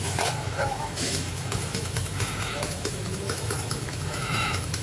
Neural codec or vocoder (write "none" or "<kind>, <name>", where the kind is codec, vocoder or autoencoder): autoencoder, DAC-VAE